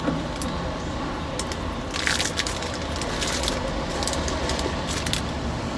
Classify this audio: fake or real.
real